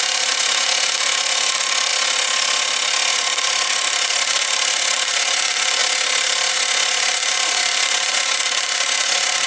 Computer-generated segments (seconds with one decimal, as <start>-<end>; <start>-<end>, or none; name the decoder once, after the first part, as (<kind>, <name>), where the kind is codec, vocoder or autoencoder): 0.0-1.9 (vocoder, Vocos); 3.1-5.8; 6.5-9.5